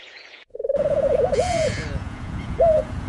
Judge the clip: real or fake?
fake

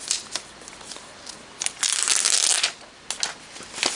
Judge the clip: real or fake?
real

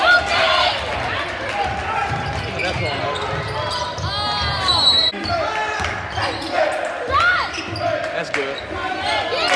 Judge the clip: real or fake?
real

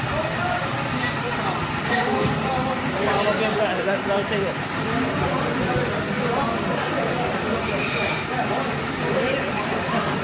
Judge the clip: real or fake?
real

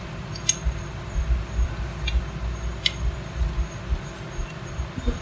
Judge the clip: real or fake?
real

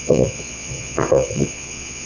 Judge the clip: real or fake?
fake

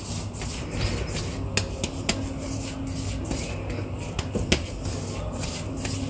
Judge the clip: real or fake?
real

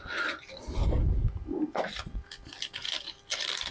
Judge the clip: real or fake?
real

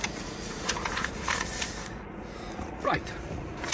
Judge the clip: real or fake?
fake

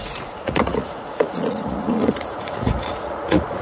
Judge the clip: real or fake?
fake